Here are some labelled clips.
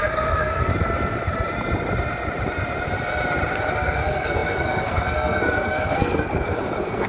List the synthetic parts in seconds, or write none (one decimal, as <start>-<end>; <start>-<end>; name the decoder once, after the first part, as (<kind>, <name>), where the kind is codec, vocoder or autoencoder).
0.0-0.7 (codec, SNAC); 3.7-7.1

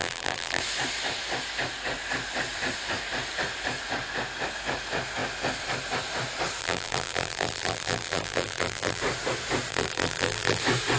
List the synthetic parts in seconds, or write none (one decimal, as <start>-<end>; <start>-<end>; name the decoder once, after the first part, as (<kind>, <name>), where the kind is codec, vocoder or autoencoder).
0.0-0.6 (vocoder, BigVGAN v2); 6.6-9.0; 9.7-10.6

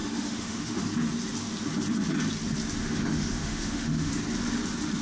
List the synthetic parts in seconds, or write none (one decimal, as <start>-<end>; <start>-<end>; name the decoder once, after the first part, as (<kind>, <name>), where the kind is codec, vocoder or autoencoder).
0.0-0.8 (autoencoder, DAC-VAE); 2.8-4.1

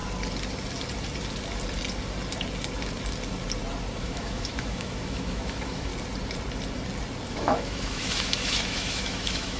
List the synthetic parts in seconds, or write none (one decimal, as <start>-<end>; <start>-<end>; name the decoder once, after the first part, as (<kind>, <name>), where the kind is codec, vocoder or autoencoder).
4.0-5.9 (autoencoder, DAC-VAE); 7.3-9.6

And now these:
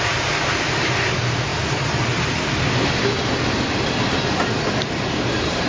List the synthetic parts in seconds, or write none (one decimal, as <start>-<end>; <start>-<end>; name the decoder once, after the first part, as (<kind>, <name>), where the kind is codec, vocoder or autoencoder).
none

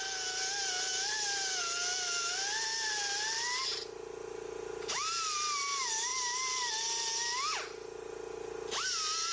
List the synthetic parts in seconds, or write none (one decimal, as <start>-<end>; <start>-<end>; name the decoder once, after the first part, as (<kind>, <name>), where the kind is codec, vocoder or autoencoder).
none